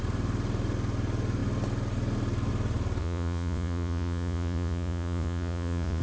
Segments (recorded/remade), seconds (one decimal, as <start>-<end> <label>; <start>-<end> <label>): 0.0-3.0 recorded; 3.0-6.0 remade